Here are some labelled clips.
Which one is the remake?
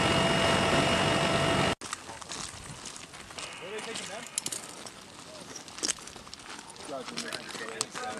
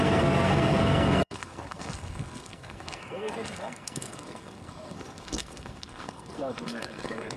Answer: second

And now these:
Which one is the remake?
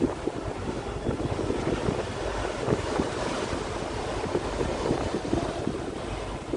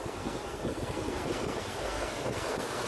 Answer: second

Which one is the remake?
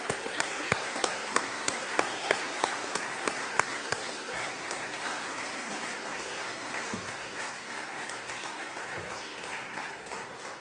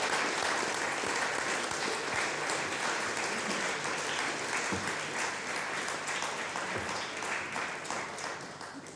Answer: first